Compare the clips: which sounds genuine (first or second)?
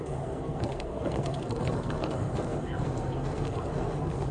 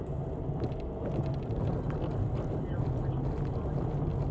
second